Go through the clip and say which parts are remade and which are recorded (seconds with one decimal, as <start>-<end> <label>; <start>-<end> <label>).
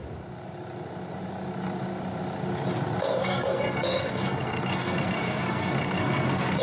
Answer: 0.0-3.0 recorded; 3.0-6.6 remade